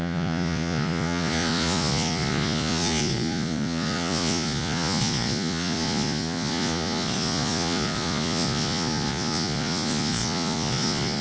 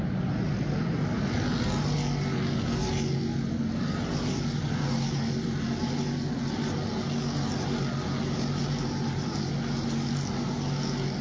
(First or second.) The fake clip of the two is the first